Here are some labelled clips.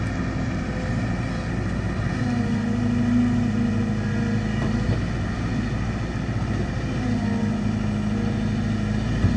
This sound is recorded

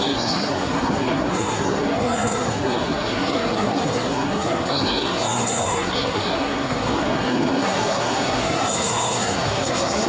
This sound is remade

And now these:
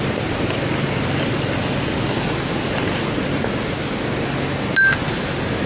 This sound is recorded